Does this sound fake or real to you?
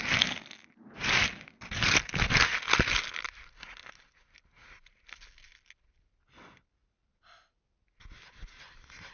real